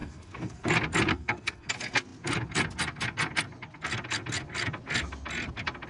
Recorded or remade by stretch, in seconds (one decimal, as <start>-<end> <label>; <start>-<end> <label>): 0.0-0.7 remade; 0.7-1.1 recorded; 1.1-1.7 remade; 1.7-5.9 recorded